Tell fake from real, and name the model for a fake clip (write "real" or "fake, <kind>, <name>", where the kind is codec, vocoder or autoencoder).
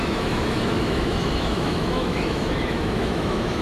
fake, autoencoder, DAC-VAE